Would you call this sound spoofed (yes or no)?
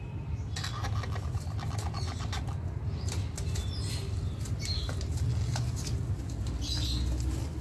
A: no